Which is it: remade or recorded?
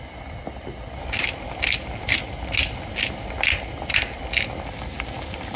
recorded